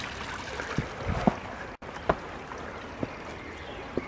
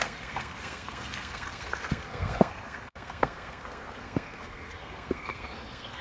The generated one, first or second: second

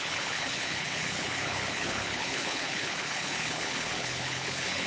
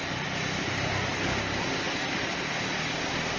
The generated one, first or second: first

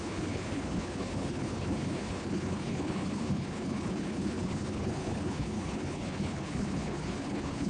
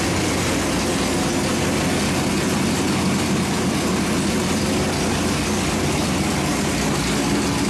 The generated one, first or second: first